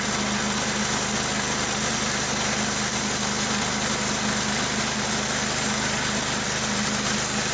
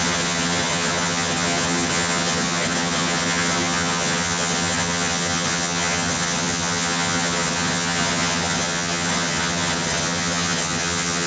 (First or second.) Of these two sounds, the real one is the first